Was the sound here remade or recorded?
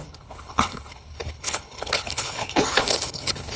remade